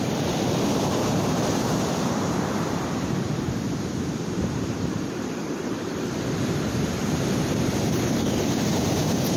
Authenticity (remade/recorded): remade